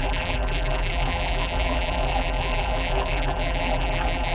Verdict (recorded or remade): remade